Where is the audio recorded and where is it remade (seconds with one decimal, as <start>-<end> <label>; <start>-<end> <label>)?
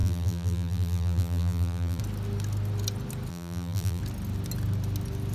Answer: 0.0-2.0 remade; 2.0-3.3 recorded; 3.3-4.0 remade; 4.0-5.3 recorded